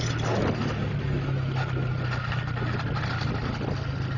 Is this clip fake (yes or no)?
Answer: no